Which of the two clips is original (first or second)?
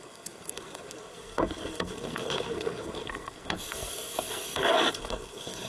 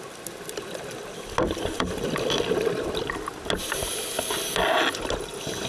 second